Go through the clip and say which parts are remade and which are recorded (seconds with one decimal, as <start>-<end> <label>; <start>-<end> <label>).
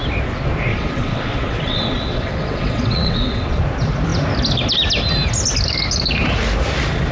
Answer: 0.0-0.7 recorded; 0.7-3.6 remade; 3.6-7.1 recorded